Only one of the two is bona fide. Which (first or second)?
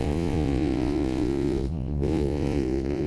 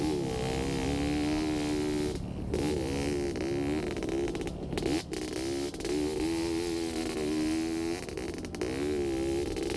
second